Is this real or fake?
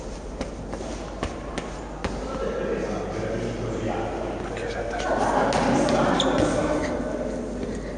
real